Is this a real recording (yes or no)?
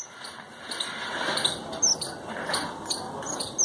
yes